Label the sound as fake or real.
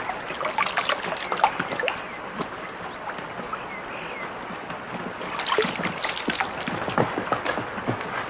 real